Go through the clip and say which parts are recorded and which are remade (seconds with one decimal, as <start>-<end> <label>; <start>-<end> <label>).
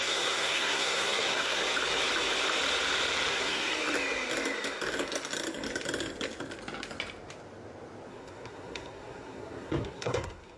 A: 0.0-1.6 remade; 1.6-3.3 recorded; 3.3-3.7 remade; 3.7-8.1 recorded; 8.1-10.6 remade